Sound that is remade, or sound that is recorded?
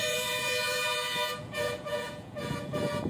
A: remade